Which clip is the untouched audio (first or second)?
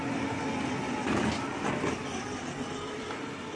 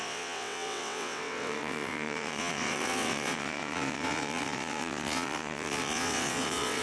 first